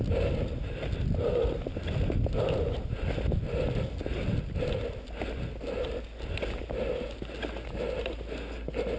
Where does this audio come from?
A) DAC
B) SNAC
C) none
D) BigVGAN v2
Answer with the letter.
C